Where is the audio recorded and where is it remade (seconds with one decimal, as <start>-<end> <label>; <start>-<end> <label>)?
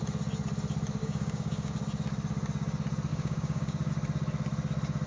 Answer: 0.0-1.0 recorded; 1.0-1.7 remade; 1.7-3.1 recorded; 3.1-3.9 remade; 3.9-5.1 recorded